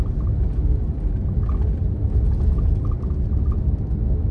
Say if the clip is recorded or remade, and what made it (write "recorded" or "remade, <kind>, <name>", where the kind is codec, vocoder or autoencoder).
recorded